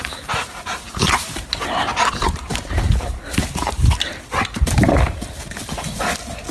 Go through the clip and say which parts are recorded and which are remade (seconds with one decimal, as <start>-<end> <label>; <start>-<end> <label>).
0.0-3.8 remade; 3.8-6.5 recorded